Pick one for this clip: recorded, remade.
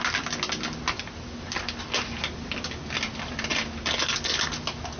recorded